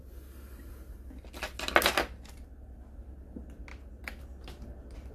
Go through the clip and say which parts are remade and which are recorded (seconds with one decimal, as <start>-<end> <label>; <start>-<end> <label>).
0.0-5.1 recorded